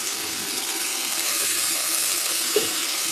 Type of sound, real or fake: fake